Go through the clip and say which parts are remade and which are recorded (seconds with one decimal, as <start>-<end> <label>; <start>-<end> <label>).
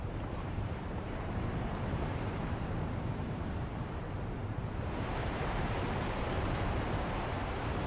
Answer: 0.0-7.9 remade